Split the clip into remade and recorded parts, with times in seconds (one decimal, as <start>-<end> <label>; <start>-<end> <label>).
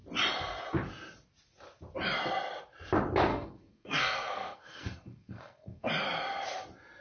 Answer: 0.0-3.3 recorded; 3.3-5.9 remade; 5.9-7.0 recorded